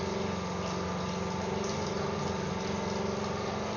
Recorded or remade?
recorded